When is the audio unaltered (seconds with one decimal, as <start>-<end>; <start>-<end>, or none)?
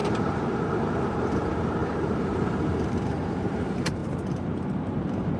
4.0-4.5